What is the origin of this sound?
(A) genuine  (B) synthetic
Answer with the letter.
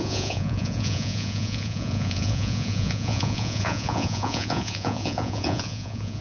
B